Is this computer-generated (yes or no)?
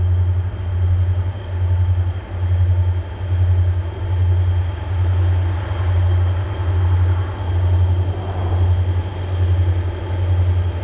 no